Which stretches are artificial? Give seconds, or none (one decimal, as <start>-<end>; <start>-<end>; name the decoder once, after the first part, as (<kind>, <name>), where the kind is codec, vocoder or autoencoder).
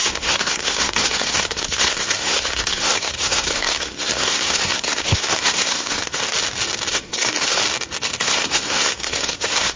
0.0-6.2 (codec, SNAC); 6.9-7.6; 8.2-9.8